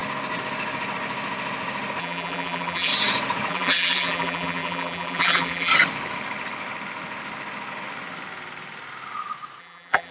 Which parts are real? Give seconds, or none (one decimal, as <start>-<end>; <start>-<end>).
0.0-2.0; 2.9-3.5; 5.7-9.6